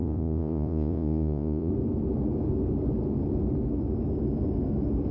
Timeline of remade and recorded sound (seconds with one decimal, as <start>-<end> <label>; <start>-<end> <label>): 0.0-1.7 remade; 1.7-5.1 recorded